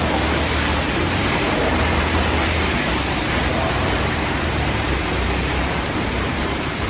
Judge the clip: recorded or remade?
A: remade